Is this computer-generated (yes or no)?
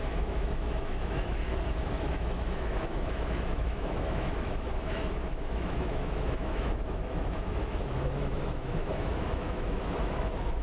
yes